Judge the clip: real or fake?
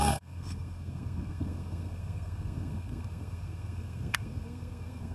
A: fake